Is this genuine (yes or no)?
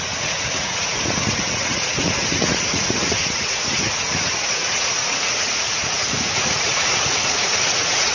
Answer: no